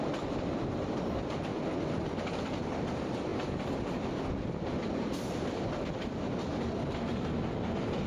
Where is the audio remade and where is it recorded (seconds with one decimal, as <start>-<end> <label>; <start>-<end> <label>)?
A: 0.0-1.5 remade; 1.5-2.2 recorded; 2.2-3.3 remade; 3.3-8.1 recorded